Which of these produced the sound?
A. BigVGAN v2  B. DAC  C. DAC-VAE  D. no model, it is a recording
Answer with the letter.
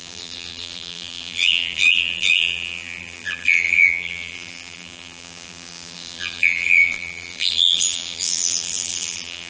A